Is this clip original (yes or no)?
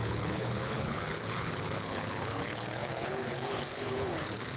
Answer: no